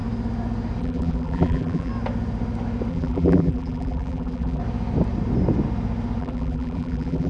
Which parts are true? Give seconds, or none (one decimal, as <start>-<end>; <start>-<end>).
0.0-0.8; 1.9-2.9; 4.6-6.2